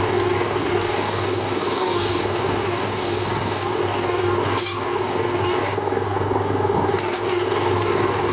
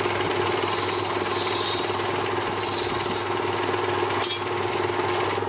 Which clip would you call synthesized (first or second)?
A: first